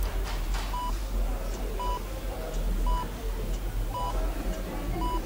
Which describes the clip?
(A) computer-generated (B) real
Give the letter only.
B